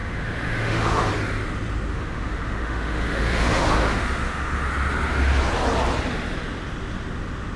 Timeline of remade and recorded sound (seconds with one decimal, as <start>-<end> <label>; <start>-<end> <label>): 0.0-1.1 remade; 1.1-1.9 recorded; 1.9-4.7 remade; 4.7-7.6 recorded